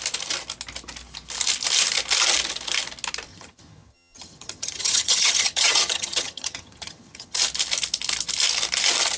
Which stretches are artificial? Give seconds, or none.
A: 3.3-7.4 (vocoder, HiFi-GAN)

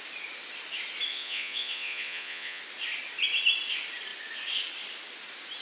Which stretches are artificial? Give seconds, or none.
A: 1.1-2.6 (vocoder, Vocos)

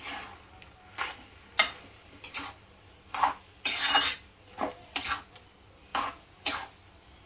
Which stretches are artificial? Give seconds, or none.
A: 5.9-6.5 (vocoder, Vocos)

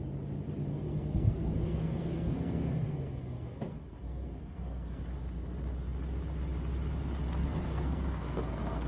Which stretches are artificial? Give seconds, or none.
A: 0.7-5.0 (codec, SNAC); 7.4-8.9

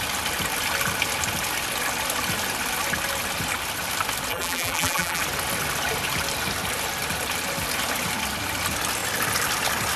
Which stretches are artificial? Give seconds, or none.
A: 4.3-5.2 (vocoder, BigVGAN v2)